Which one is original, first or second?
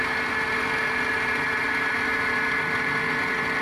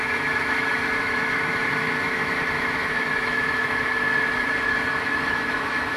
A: first